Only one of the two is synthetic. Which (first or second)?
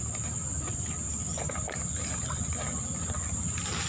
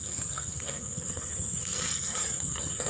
second